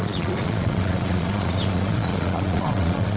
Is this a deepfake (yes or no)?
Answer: yes